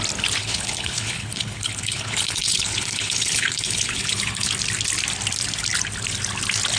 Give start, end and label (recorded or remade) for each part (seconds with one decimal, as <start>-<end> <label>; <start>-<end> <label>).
0.0-0.4 recorded; 0.4-4.5 remade; 4.5-6.8 recorded